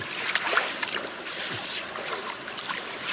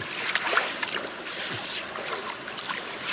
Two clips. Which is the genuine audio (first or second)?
second